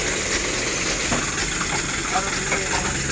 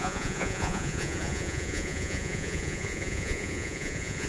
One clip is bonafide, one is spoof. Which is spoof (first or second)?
second